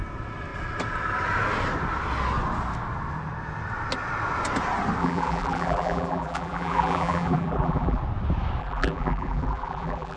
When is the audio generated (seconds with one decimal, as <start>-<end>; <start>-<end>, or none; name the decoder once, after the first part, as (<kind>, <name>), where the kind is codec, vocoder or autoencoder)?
5.0-8.0 (vocoder, BigVGAN v2); 8.6-10.2